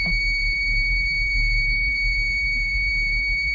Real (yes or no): no